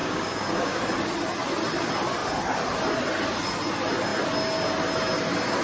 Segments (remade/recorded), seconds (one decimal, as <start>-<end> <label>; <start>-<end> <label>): 0.0-0.8 remade; 0.8-5.6 recorded